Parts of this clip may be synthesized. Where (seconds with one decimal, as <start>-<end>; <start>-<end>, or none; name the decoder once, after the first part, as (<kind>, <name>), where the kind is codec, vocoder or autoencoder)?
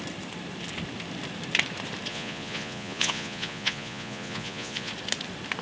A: 2.1-4.9 (vocoder, Vocos)